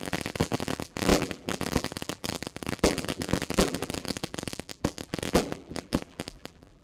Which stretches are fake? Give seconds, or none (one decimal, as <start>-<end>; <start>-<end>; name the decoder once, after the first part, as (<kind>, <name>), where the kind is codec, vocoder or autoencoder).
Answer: 0.0-6.8 (vocoder, BigVGAN v2)